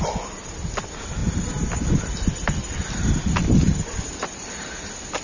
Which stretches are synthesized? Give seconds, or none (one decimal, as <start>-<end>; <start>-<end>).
none